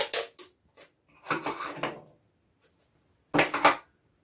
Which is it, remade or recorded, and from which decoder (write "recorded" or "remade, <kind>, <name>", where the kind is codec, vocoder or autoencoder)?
recorded